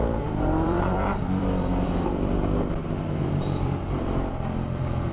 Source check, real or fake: fake